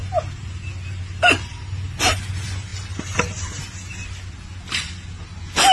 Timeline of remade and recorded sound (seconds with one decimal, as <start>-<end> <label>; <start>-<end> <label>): 0.0-2.3 remade; 2.3-2.7 recorded; 2.7-4.9 remade; 4.9-5.7 recorded